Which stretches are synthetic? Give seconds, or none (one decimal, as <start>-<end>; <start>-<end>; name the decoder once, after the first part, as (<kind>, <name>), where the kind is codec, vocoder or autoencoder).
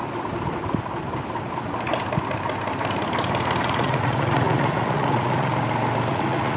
3.6-5.5 (vocoder, Vocos); 6.1-6.6